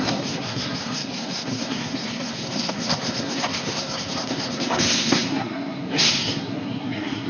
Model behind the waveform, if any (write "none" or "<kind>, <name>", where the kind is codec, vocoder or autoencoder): codec, SNAC